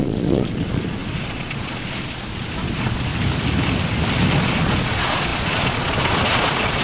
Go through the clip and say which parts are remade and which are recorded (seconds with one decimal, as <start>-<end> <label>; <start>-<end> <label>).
0.0-3.1 remade; 3.1-4.4 recorded; 4.4-6.8 remade